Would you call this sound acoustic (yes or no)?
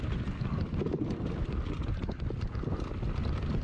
yes